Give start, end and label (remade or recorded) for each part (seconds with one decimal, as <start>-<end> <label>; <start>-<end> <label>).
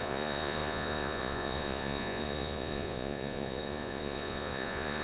0.0-5.0 remade